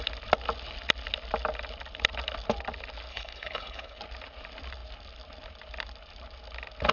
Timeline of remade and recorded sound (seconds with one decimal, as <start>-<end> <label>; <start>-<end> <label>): 0.0-3.1 recorded; 3.1-4.0 remade; 4.0-6.9 recorded